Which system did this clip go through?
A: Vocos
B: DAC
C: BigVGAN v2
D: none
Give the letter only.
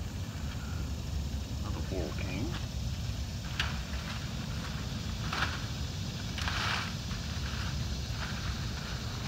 C